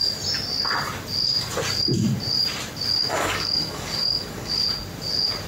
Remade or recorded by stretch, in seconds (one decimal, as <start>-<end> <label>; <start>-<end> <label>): 0.0-3.0 recorded; 3.0-4.6 remade; 4.6-5.5 recorded